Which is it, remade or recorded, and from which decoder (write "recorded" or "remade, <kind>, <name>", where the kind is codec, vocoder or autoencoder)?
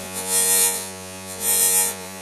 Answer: remade, vocoder, Vocos